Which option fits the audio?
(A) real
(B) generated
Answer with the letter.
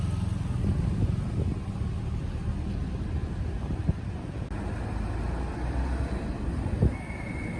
A